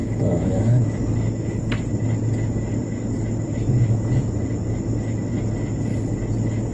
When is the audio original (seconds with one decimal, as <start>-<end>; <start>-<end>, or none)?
1.0-6.7